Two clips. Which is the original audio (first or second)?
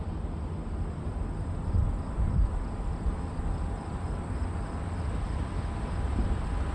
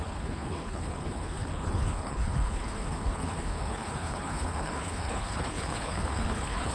first